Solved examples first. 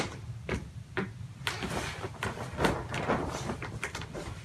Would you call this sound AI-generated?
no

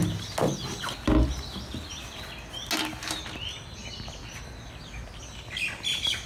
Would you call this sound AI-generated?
no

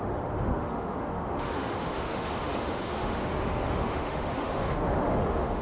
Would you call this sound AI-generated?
yes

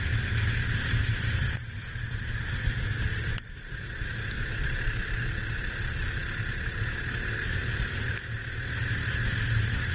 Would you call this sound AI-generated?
no